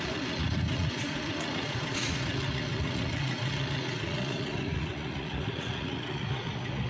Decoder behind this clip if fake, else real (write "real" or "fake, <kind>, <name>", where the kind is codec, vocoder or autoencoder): fake, vocoder, Vocos